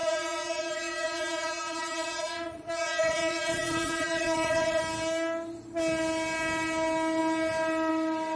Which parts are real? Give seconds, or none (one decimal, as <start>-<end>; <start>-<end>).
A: 4.8-8.4